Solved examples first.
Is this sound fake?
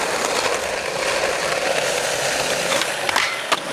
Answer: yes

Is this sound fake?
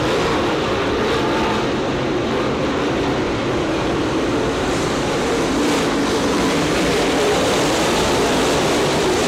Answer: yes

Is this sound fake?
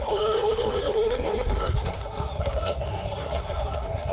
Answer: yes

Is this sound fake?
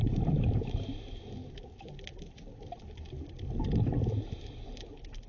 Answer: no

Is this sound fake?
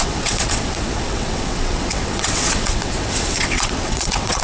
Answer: yes